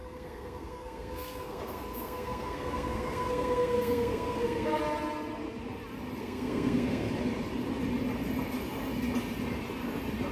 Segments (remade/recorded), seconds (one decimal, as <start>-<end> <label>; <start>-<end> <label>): 0.0-4.8 remade; 4.8-6.2 recorded; 6.2-7.1 remade; 7.1-10.3 recorded